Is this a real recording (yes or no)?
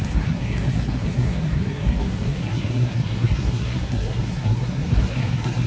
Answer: no